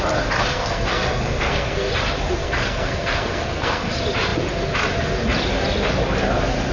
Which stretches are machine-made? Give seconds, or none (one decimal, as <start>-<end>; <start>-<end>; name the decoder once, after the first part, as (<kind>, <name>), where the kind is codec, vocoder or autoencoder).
0.5-1.9 (codec, SNAC); 2.4-3.9